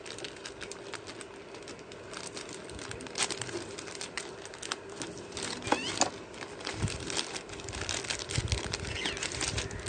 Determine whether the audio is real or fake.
real